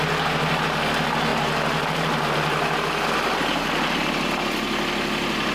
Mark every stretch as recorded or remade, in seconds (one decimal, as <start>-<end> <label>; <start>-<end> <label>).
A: 0.0-5.5 recorded